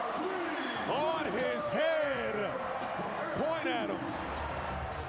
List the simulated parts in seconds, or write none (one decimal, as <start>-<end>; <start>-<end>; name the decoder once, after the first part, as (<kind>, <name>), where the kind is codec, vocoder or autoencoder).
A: 0.0-2.4 (vocoder, BigVGAN v2); 4.1-5.1